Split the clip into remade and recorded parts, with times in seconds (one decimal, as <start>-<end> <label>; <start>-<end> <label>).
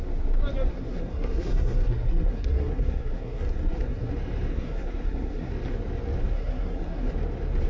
0.0-0.7 recorded; 0.7-4.1 remade; 4.1-4.5 recorded; 4.5-5.5 remade; 5.5-6.3 recorded; 6.3-7.1 remade; 7.1-7.7 recorded